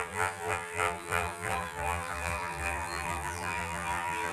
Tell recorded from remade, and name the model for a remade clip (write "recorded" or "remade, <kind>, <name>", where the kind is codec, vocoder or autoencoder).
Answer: remade, vocoder, BigVGAN v2